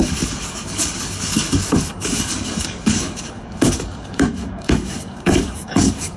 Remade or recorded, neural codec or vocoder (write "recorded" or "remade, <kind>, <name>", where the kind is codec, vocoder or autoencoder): remade, codec, DAC